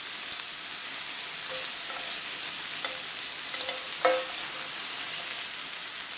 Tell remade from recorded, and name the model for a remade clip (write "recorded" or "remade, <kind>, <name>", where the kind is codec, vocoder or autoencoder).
recorded